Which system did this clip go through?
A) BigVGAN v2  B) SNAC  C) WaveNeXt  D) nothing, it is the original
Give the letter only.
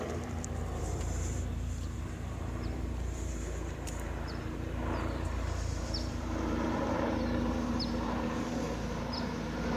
A